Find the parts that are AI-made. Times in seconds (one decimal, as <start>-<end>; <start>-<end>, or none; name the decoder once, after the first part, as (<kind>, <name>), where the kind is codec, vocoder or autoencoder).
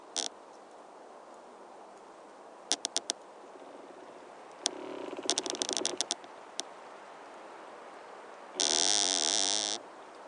none